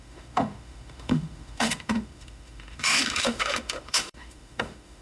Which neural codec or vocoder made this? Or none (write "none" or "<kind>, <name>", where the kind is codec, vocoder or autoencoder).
autoencoder, DAC-VAE